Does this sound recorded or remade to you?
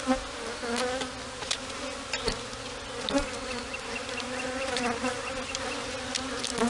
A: recorded